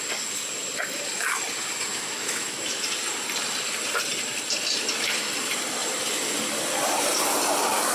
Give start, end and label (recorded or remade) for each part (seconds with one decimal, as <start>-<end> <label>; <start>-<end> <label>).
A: 0.0-1.9 recorded; 1.9-2.8 remade; 2.8-7.9 recorded